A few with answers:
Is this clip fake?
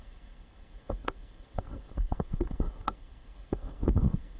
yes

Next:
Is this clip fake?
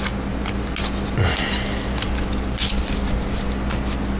no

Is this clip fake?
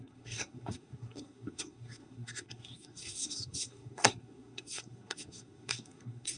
yes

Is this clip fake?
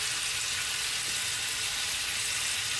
no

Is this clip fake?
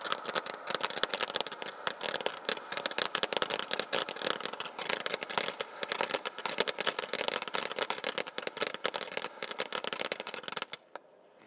no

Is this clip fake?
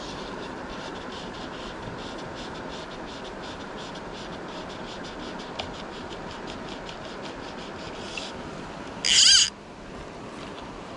no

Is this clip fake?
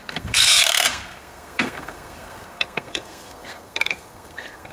yes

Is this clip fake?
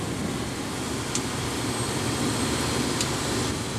no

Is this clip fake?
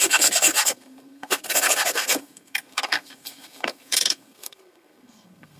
yes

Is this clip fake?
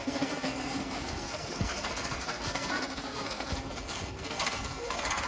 yes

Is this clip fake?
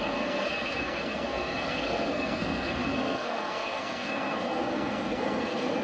yes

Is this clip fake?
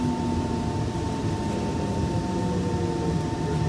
no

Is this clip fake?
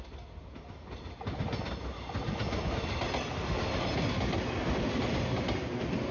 no